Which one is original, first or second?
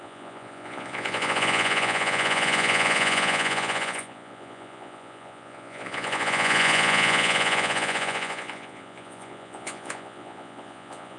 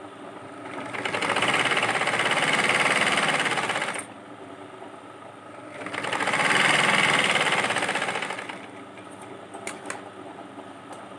second